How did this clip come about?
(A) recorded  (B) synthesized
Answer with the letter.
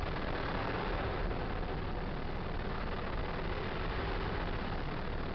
A